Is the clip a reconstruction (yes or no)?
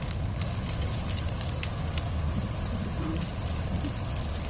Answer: no